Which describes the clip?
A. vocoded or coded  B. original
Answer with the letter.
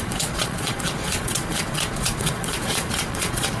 A